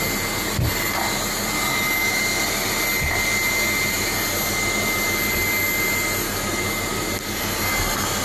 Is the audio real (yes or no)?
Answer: yes